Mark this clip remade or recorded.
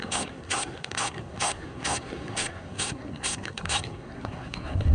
remade